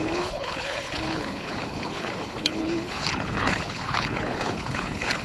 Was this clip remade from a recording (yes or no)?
yes